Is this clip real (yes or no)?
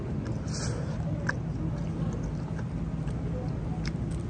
yes